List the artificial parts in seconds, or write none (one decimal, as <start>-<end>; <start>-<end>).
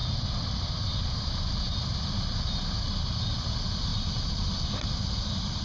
3.9-4.9